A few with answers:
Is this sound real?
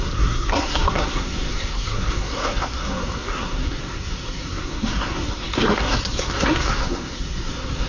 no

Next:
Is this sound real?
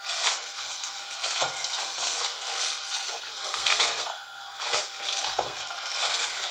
no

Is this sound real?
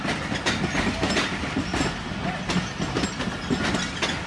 yes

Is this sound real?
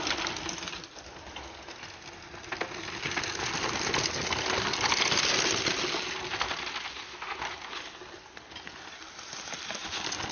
yes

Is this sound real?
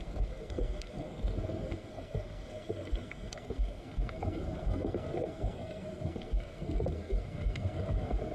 no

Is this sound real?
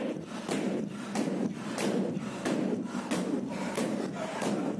yes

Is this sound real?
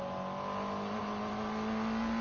yes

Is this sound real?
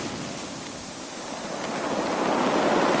yes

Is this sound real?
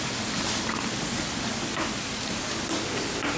yes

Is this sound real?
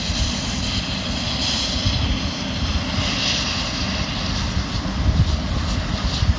yes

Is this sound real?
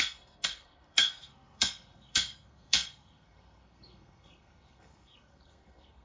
no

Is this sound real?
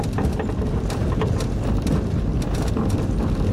yes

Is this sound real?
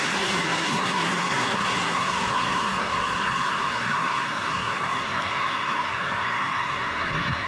no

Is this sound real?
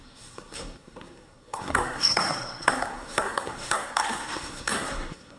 no